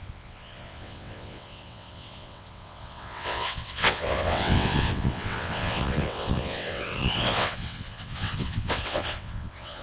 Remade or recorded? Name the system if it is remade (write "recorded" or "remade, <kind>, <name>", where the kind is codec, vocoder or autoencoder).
remade, vocoder, WaveNeXt